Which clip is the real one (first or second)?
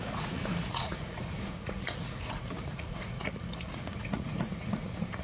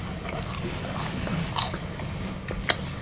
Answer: second